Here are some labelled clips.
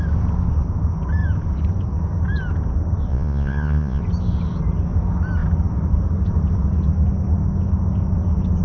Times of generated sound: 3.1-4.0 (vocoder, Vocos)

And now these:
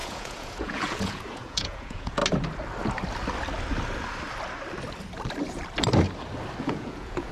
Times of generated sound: 0.0-2.2 (vocoder, Vocos); 6.6-7.3